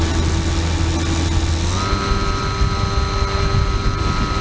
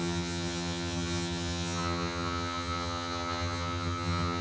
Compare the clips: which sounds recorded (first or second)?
first